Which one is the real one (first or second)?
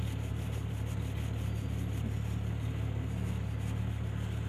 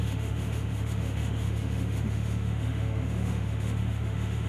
first